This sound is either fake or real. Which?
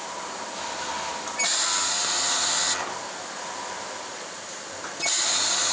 real